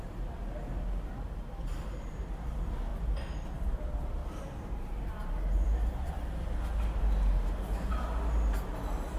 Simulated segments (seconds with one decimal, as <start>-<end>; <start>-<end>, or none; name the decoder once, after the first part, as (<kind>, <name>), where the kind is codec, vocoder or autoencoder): 4.2-6.1 (vocoder, BigVGAN v2)